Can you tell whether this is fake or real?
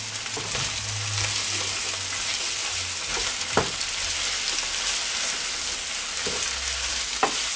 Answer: real